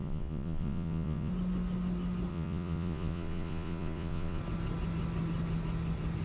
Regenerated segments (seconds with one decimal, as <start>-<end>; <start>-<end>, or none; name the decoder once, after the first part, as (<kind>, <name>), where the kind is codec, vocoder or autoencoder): 0.0-1.3 (vocoder, Vocos); 2.3-4.4